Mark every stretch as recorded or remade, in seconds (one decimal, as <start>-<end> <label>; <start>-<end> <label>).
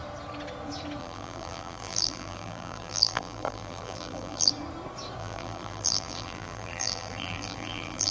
0.0-1.0 recorded; 1.0-4.5 remade; 4.5-5.2 recorded; 5.2-8.1 remade